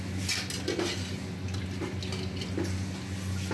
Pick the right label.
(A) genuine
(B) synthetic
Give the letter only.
A